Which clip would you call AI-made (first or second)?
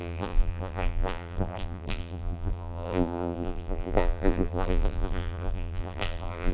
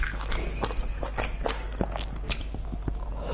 first